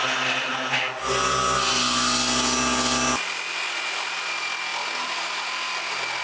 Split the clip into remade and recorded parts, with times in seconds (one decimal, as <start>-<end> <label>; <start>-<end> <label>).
0.0-6.2 recorded